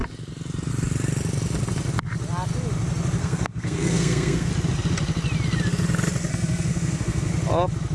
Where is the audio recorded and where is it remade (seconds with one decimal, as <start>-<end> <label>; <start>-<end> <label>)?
0.0-3.2 recorded; 3.2-4.5 remade; 4.5-6.3 recorded; 6.3-7.3 remade; 7.3-7.9 recorded